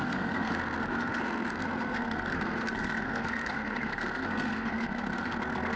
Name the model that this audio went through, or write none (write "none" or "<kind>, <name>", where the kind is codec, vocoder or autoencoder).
codec, SNAC